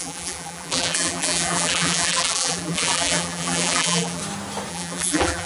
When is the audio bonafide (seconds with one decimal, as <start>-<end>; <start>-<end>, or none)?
4.2-4.7